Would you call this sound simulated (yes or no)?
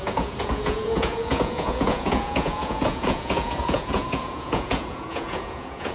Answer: yes